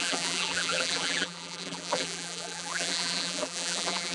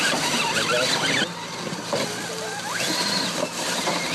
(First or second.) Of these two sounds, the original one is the second